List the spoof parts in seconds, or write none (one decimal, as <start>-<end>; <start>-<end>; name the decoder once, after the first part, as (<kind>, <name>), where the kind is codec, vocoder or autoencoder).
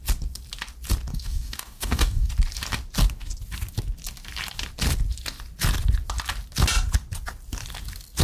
1.1-2.3 (codec, DAC)